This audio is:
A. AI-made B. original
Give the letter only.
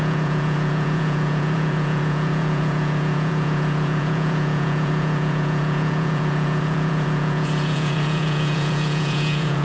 A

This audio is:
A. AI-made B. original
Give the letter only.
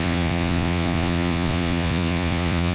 A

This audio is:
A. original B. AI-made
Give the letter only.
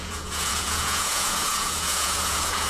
B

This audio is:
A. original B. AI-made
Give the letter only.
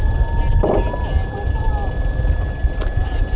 A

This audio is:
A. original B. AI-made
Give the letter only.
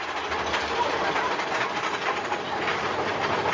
A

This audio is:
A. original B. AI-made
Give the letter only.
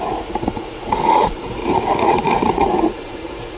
B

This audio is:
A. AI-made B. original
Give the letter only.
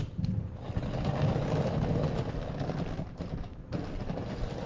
B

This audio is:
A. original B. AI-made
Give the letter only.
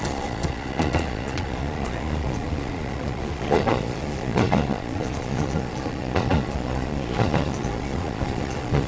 B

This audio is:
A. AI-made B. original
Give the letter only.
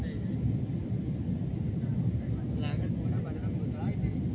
B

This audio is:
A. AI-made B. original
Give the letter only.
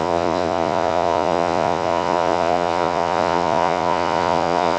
A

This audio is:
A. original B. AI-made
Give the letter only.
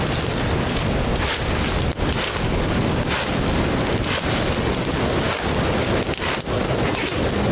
A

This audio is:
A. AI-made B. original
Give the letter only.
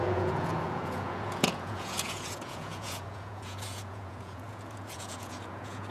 A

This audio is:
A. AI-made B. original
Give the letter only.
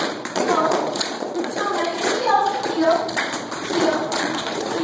A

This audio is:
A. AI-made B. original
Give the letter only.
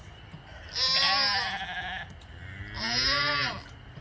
B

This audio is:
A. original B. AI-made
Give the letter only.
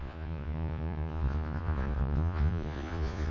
B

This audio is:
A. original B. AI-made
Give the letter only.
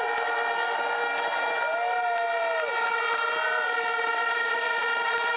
A